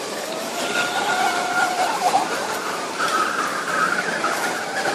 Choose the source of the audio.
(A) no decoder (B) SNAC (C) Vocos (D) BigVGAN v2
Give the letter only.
D